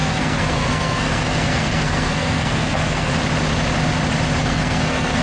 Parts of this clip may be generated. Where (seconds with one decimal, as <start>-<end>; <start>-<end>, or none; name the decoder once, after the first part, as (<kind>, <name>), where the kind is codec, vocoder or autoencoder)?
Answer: 0.0-3.1 (codec, SNAC); 4.4-5.2